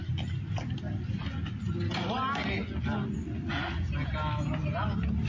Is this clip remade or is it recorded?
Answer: recorded